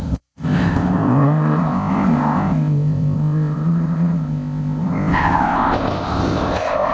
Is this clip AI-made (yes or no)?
yes